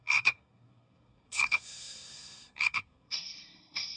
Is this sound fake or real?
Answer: fake